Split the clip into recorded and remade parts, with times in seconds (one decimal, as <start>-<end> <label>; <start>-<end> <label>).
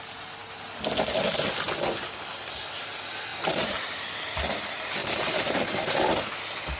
0.0-3.3 recorded; 3.3-4.0 remade; 4.0-5.0 recorded; 5.0-6.1 remade; 6.1-6.8 recorded